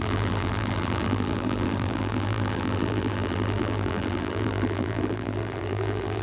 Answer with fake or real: fake